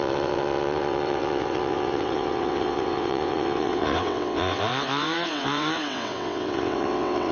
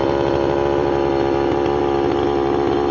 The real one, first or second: second